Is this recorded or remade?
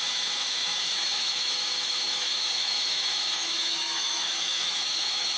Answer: remade